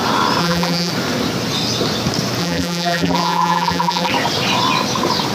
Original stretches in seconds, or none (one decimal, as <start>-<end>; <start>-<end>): 0.0-0.4; 0.9-2.4; 4.1-5.3